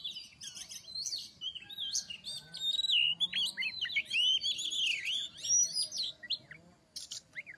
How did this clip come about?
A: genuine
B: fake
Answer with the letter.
A